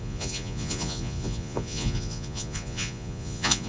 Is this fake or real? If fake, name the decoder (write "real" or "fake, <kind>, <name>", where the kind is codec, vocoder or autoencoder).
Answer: fake, vocoder, Vocos